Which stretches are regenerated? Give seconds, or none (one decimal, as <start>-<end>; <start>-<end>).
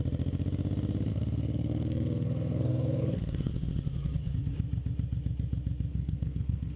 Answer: 1.1-3.5; 5.9-6.8